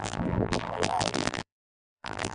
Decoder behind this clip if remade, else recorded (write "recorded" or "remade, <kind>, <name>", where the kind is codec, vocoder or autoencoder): remade, vocoder, BigVGAN v2